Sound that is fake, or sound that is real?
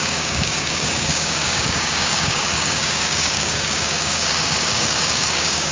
fake